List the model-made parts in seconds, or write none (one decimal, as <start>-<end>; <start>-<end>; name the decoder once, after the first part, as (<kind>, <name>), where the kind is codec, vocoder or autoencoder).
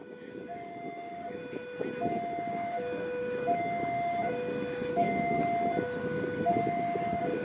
0.0-1.4 (codec, DAC); 2.5-5.4; 6.0-7.4